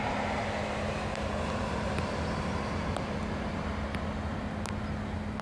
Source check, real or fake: real